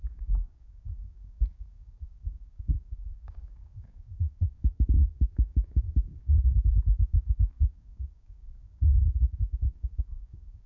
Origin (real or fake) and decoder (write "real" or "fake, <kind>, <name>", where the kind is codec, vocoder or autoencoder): fake, codec, DAC